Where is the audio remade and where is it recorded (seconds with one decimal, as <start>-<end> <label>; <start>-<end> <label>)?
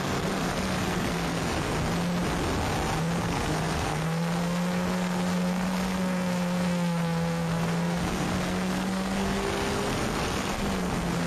0.0-1.7 remade; 1.7-3.2 recorded; 3.2-11.3 remade